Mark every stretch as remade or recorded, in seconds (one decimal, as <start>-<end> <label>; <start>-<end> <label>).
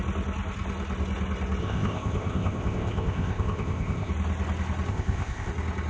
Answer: 0.0-1.6 recorded; 1.6-4.1 remade; 4.1-4.9 recorded; 4.9-5.5 remade; 5.5-5.9 recorded